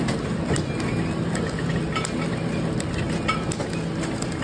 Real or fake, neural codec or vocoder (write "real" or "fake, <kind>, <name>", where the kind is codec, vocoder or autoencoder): real